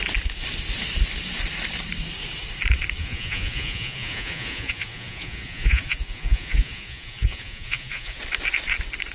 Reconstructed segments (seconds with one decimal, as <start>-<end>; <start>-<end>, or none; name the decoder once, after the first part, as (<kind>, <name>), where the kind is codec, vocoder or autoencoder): 3.0-8.2 (vocoder, Vocos)

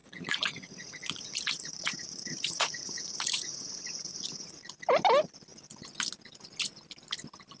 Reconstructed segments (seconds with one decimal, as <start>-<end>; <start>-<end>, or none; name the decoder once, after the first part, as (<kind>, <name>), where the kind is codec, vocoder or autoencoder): 0.0-4.6 (vocoder, Vocos)

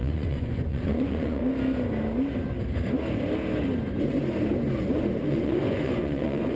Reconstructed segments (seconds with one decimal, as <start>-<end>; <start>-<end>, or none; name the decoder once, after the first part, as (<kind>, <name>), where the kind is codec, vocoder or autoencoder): 0.0-1.4 (vocoder, Vocos); 5.3-6.5